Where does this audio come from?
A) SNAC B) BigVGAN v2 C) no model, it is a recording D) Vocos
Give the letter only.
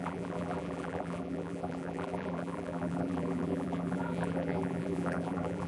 B